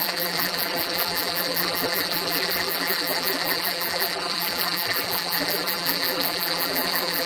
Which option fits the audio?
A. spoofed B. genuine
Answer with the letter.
A